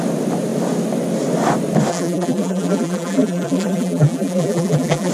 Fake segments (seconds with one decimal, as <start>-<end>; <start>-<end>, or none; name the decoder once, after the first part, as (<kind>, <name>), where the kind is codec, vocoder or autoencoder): 1.9-5.1 (vocoder, BigVGAN v2)